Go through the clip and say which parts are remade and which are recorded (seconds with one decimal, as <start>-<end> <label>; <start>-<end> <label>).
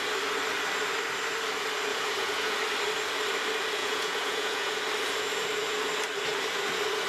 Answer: 0.0-1.9 recorded; 1.9-2.6 remade; 2.6-3.8 recorded; 3.8-4.8 remade; 4.8-7.1 recorded